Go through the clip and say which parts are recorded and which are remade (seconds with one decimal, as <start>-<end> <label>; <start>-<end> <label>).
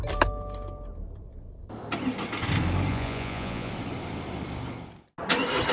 0.0-2.9 recorded; 2.9-3.7 remade; 3.7-5.7 recorded